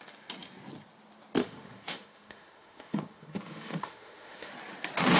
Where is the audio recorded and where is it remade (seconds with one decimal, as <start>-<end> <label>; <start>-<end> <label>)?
0.0-1.4 recorded; 1.4-4.5 remade; 4.5-5.2 recorded